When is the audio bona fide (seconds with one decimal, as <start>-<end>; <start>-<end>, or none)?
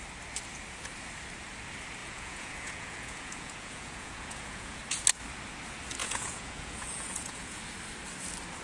0.0-2.0; 4.8-6.0; 7.6-8.6